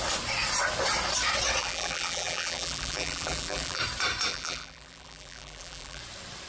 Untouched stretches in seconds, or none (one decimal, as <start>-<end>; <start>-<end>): 0.0-1.6; 3.8-4.3; 6.0-6.5